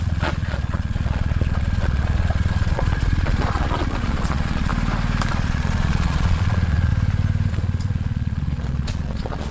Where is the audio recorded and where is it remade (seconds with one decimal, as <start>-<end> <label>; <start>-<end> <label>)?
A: 0.0-4.7 remade; 4.7-5.3 recorded; 5.3-6.9 remade; 6.9-7.5 recorded; 7.5-9.5 remade